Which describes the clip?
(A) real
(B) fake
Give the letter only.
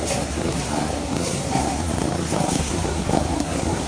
B